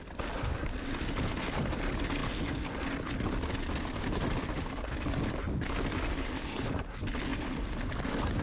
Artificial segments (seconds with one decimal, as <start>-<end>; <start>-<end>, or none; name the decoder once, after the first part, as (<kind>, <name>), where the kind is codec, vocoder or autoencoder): none